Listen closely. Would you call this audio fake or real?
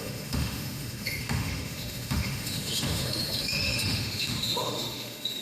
fake